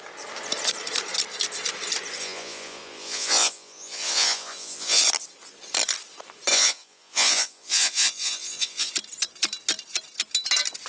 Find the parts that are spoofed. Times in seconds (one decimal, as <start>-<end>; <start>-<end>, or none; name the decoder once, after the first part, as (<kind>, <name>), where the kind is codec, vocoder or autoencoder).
2.2-5.0 (vocoder, Vocos); 6.5-8.9